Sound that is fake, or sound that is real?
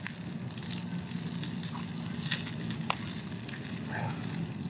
real